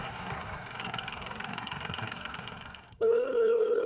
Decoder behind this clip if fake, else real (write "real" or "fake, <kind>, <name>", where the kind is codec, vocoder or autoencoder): fake, codec, SNAC